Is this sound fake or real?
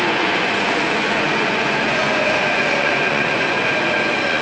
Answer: fake